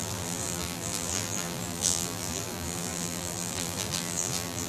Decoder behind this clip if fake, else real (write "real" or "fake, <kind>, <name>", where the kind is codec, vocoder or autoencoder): fake, vocoder, BigVGAN v2